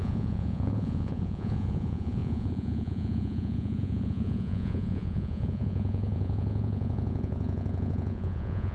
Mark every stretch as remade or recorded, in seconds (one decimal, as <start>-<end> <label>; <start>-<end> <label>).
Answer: 0.0-8.7 remade